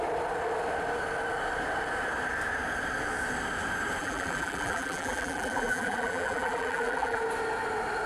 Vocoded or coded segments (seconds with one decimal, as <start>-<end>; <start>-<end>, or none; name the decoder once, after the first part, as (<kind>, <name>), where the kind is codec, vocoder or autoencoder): 4.0-7.2 (vocoder, BigVGAN v2)